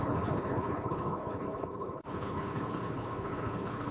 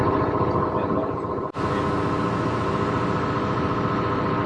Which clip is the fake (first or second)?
first